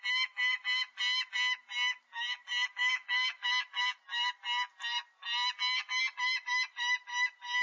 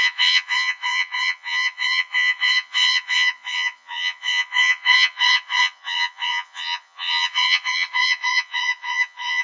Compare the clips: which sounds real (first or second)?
first